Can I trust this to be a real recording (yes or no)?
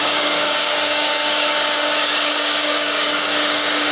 no